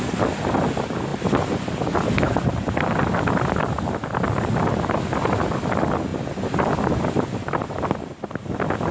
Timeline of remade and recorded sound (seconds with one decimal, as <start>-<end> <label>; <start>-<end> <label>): 0.0-8.9 recorded